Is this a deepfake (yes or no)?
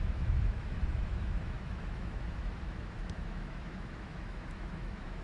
yes